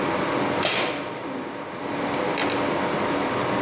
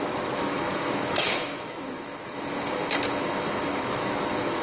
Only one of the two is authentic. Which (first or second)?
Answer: first